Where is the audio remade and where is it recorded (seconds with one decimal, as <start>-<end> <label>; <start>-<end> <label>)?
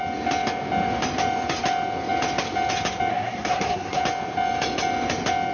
0.0-3.1 recorded; 3.1-4.0 remade; 4.0-5.5 recorded